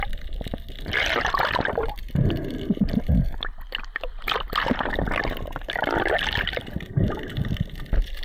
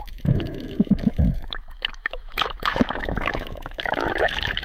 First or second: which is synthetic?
second